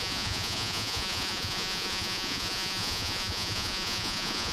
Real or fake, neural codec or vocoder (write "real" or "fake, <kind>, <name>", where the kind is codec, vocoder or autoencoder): fake, vocoder, Vocos